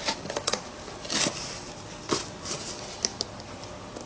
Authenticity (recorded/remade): recorded